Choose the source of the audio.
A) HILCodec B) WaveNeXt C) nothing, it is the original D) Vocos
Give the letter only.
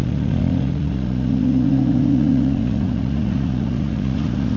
D